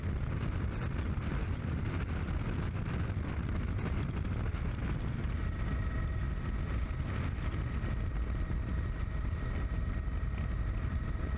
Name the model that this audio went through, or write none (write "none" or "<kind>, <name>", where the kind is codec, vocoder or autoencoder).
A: none